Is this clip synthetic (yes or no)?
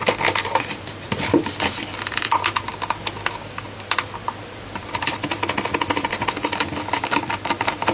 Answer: no